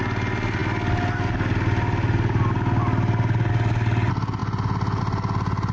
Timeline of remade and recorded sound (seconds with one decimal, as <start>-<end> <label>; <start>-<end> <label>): 0.0-5.7 recorded